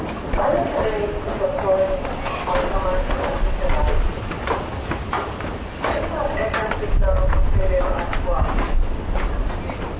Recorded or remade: recorded